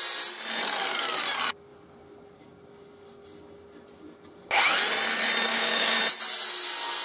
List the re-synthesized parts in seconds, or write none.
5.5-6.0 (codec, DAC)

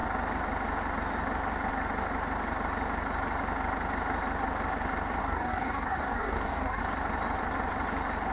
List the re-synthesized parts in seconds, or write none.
5.2-6.8 (codec, DAC)